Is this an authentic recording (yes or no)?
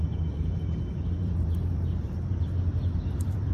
no